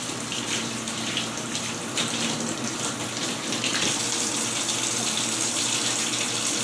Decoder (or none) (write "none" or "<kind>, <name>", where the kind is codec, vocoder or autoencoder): vocoder, BigVGAN v2